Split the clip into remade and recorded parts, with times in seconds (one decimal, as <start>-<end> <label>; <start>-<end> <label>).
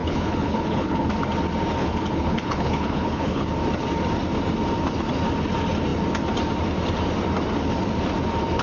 0.0-1.1 remade; 1.1-1.8 recorded; 1.8-3.5 remade; 3.5-8.6 recorded